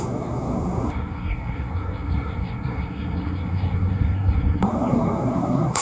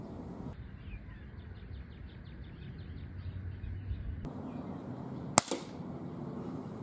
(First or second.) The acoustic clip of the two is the second